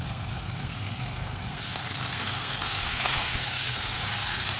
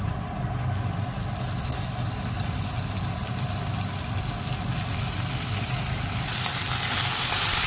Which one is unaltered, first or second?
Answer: second